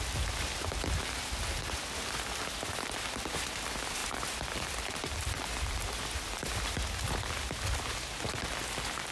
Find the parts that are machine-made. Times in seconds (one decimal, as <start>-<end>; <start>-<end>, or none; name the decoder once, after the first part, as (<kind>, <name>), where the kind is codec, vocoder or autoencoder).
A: 4.0-6.0 (vocoder, BigVGAN v2)